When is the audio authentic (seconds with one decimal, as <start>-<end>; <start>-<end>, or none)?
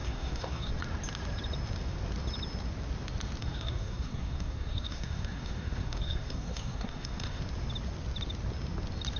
0.7-3.4; 7.4-9.2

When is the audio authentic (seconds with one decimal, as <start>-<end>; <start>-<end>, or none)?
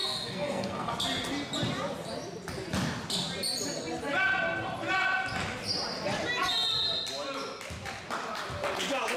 0.9-9.2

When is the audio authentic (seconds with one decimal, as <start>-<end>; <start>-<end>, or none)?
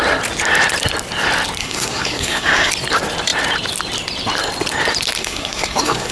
0.0-1.6; 2.7-5.2